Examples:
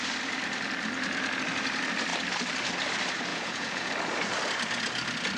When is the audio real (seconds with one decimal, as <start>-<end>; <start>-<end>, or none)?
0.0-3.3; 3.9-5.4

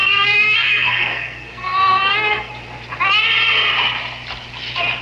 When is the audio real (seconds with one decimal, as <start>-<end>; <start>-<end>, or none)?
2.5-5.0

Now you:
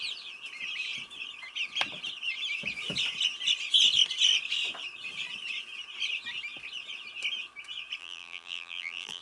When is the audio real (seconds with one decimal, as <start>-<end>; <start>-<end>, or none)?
0.0-8.0

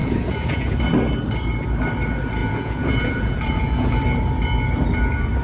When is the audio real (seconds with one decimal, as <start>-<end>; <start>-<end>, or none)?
0.8-2.4; 4.0-5.4

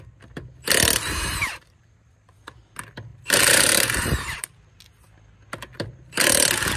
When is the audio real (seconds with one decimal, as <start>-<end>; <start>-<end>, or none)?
0.0-1.4; 2.6-3.1; 4.8-6.8

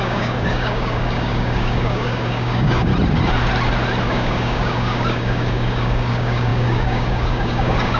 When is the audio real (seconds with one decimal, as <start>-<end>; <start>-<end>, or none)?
2.9-4.1

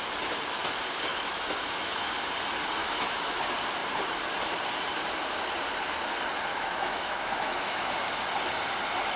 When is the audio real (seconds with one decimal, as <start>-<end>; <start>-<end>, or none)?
0.0-1.1; 2.1-2.8; 3.4-6.5; 7.9-9.2

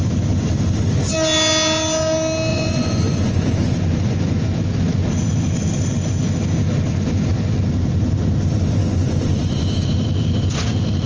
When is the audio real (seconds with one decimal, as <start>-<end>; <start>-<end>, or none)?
0.0-2.5; 4.4-8.8; 9.7-11.1